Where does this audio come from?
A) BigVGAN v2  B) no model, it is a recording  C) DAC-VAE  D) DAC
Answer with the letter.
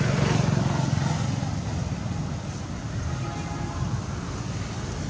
B